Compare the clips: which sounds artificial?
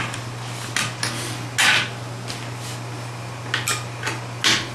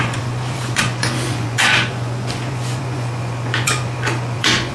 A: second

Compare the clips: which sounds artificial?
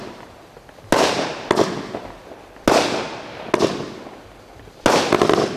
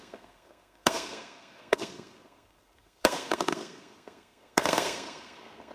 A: second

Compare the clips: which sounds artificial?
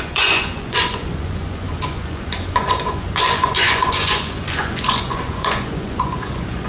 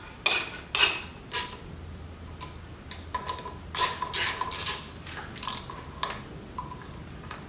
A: first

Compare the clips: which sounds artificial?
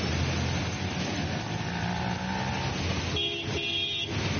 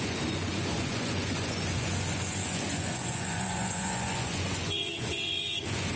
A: second